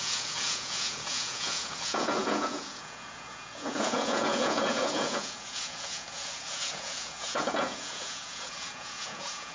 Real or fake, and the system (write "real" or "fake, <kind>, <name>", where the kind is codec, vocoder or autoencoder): fake, vocoder, Vocos